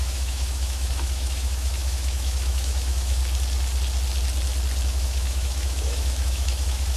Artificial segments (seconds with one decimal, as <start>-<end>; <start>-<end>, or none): 0.0-3.2; 4.9-7.0

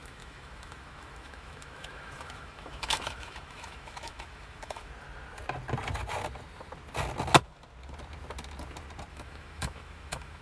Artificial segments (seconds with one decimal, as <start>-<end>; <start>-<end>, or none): 0.0-4.9; 9.1-10.4

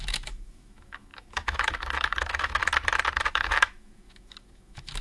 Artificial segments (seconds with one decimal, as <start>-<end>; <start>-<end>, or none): 0.0-2.6; 3.3-5.0

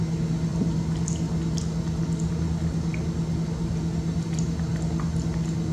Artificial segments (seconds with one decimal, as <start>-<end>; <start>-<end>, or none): none

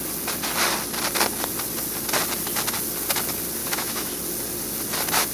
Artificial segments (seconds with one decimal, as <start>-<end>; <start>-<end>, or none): 3.6-4.1

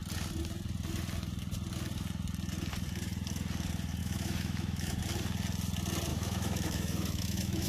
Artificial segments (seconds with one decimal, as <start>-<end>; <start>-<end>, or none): 4.0-5.0; 6.1-7.7